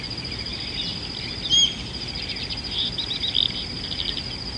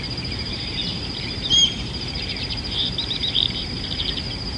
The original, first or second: first